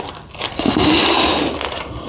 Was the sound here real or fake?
real